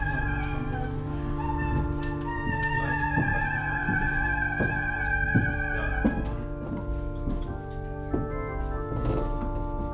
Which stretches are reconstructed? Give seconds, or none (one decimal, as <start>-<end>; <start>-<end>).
none